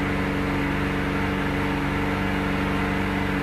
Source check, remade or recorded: recorded